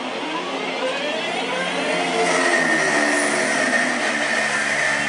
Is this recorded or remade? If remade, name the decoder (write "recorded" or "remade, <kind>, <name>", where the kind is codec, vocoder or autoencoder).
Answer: recorded